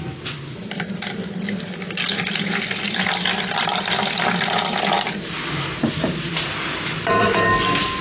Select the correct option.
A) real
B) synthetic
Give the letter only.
A